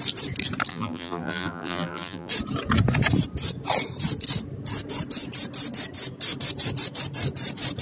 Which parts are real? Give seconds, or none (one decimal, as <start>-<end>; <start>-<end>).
0.0-0.7; 2.3-7.8